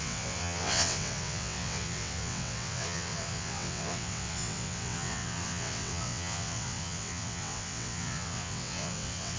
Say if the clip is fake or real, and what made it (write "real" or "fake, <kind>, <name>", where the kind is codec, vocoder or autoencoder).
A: fake, vocoder, WaveNeXt